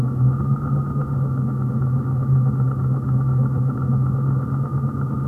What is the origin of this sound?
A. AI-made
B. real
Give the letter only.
A